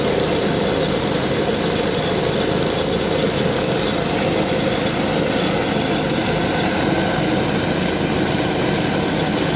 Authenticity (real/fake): real